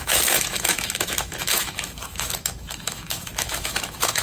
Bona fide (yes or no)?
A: no